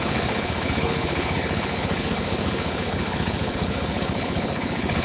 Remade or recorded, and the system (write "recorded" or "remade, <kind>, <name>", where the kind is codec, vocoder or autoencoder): remade, codec, HILCodec